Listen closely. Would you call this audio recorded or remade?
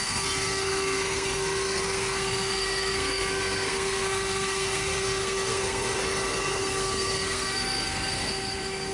remade